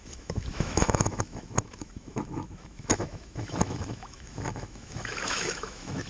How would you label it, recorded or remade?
remade